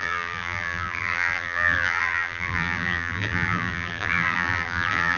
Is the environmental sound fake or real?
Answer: fake